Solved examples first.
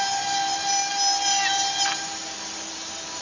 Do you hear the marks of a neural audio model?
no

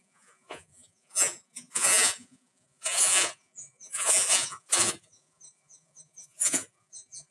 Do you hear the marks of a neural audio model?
yes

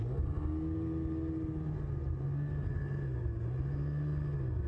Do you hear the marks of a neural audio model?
no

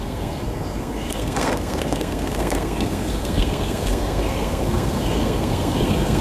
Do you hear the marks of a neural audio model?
yes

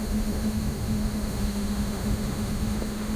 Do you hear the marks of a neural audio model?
yes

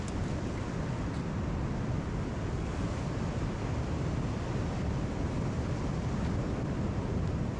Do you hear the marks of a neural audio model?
no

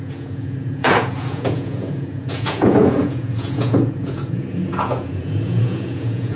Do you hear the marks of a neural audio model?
yes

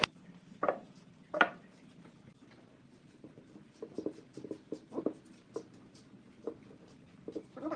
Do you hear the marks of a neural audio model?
yes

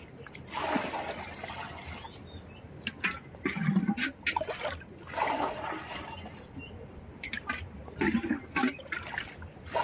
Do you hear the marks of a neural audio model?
no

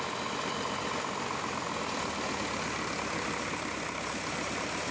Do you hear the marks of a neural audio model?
no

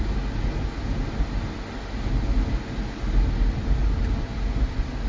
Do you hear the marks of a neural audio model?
no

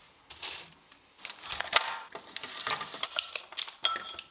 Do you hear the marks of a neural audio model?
no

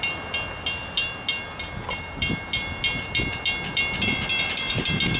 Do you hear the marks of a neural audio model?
no